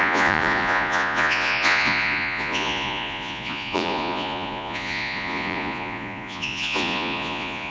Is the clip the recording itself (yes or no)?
no